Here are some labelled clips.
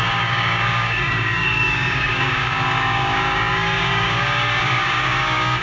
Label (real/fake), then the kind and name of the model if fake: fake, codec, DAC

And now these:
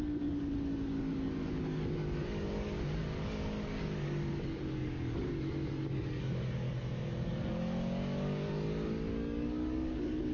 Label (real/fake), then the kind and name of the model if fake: fake, codec, DAC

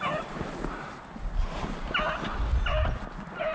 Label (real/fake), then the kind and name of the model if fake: real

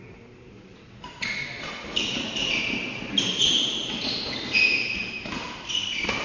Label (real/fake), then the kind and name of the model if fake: real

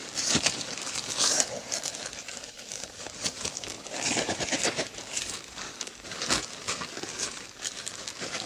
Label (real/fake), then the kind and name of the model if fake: fake, codec, DAC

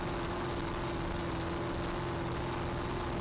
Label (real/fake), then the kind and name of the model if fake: real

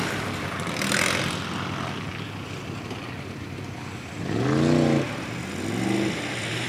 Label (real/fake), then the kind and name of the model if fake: real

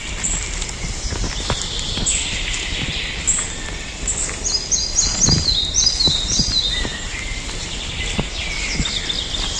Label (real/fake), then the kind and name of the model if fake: real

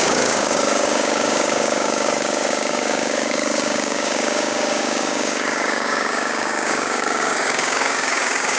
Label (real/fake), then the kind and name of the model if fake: fake, codec, DAC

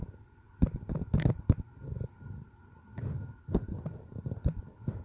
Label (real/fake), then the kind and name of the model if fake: real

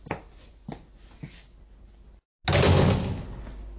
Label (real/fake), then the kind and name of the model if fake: real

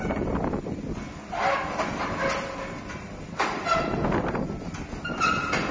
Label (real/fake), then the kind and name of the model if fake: real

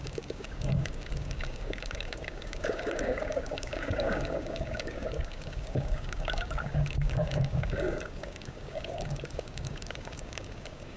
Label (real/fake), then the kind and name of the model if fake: fake, codec, DAC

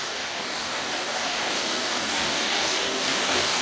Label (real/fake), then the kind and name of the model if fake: fake, codec, DAC